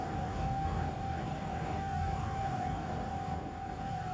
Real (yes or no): no